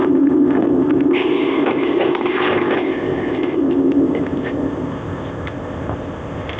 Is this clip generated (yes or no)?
yes